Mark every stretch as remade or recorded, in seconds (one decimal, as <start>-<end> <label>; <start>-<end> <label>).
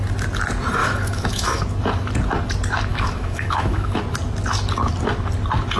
0.0-0.8 recorded; 0.8-1.6 remade; 1.6-2.9 recorded; 2.9-4.0 remade; 4.0-5.8 recorded